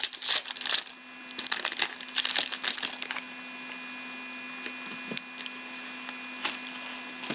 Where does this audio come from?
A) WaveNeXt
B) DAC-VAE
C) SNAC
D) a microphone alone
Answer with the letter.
D